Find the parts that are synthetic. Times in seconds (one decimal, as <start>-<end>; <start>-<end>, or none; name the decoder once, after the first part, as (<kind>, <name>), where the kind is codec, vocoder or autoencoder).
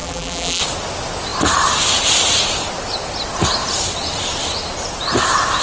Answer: 0.0-0.6 (vocoder, BigVGAN v2)